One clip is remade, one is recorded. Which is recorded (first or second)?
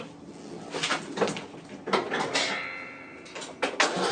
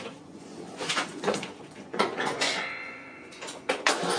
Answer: first